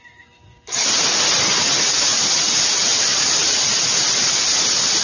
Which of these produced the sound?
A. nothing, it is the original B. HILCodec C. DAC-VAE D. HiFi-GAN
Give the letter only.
A